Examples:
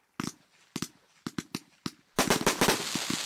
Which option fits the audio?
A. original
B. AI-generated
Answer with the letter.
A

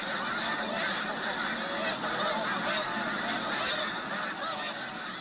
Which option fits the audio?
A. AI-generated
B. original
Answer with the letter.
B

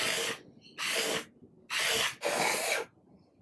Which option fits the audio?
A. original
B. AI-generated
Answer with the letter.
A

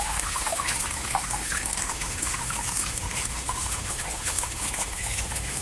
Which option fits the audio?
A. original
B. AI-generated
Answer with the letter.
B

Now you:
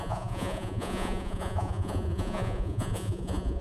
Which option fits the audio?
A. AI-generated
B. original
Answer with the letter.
A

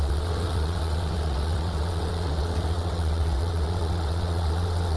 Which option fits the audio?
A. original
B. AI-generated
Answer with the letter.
B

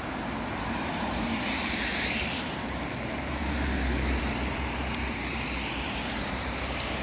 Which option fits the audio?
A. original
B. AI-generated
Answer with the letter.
B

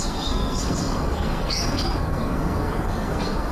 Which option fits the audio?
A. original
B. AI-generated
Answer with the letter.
B